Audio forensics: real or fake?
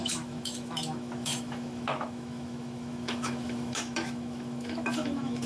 fake